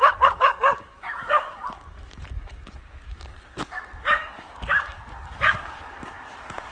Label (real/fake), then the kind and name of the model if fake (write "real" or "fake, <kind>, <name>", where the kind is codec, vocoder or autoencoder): fake, codec, DAC